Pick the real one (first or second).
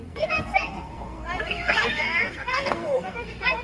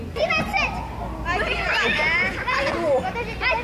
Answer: second